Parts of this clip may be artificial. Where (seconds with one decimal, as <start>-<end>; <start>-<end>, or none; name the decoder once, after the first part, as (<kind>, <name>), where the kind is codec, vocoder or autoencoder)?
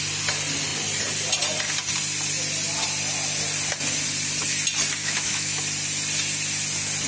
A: 5.0-5.6 (autoencoder, DAC-VAE)